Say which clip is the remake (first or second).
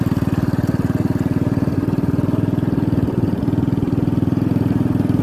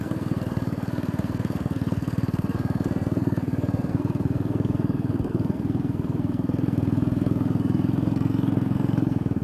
second